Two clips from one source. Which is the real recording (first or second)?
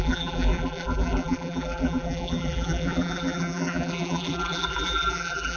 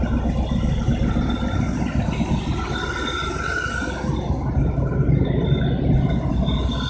second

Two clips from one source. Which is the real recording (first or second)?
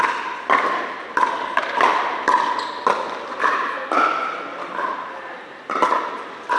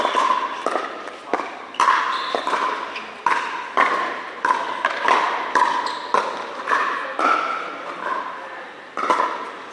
second